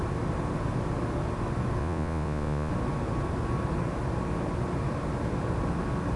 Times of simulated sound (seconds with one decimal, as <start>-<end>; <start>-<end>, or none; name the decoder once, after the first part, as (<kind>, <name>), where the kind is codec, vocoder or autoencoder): 1.8-2.7 (vocoder, Vocos)